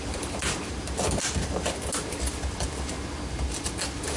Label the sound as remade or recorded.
recorded